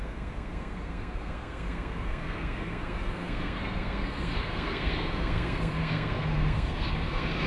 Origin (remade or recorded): remade